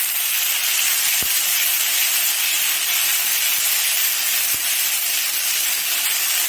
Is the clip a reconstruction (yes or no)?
no